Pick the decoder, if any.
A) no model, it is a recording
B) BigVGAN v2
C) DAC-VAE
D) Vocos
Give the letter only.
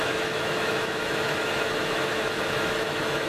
C